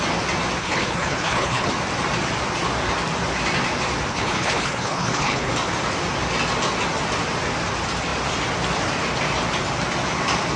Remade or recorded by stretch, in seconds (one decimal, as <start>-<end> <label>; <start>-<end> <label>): 0.0-0.6 recorded; 0.6-1.7 remade; 1.7-4.1 recorded; 4.1-5.5 remade; 5.5-10.6 recorded